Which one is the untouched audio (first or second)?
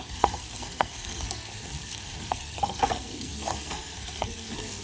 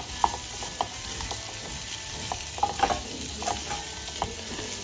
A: second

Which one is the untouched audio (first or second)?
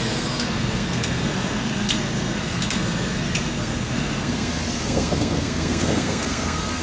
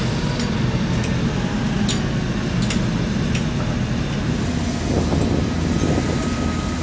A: second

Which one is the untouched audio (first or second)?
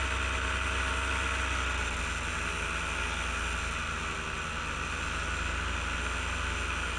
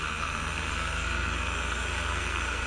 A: first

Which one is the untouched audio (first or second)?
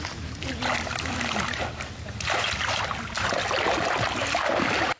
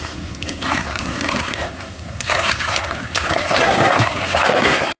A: first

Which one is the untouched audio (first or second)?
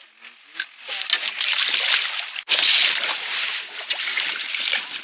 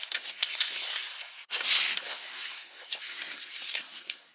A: first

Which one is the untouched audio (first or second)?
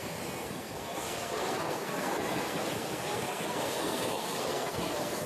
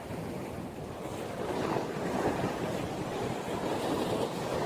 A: second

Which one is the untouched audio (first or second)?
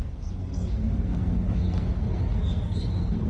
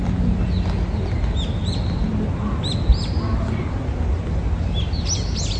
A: second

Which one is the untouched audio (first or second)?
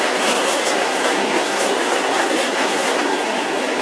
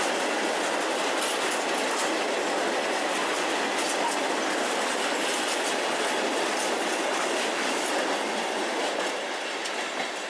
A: second